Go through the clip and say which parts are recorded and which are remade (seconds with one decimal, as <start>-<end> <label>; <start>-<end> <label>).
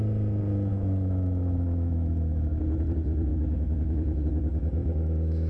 0.0-0.7 recorded; 0.7-2.6 remade; 2.6-3.3 recorded; 3.3-4.2 remade; 4.2-4.8 recorded; 4.8-5.5 remade